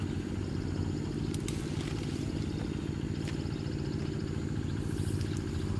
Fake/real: real